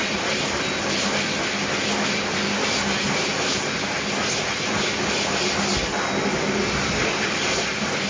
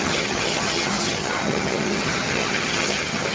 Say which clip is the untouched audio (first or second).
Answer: first